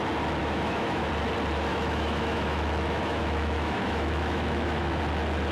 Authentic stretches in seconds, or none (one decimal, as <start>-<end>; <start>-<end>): 0.0-0.4; 1.1-1.7; 5.0-5.5